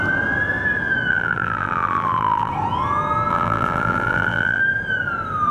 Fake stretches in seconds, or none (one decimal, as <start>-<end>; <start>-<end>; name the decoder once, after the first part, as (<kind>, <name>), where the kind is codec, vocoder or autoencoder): 1.1-2.5 (vocoder, BigVGAN v2); 3.3-4.6